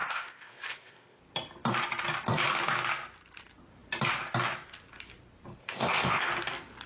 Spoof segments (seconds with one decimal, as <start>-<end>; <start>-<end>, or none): 0.0-1.2; 5.6-6.3